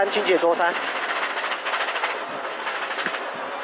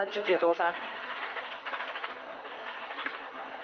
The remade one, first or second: second